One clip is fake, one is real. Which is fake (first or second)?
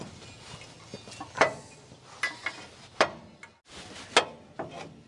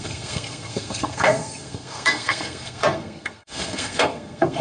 second